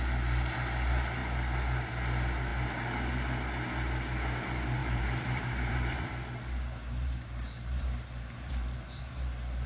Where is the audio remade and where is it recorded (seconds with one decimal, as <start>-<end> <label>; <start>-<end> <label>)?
0.0-4.8 recorded; 4.8-9.0 remade; 9.0-9.7 recorded